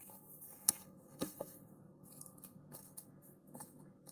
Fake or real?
fake